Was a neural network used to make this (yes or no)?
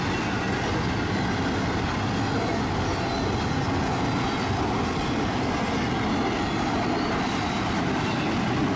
no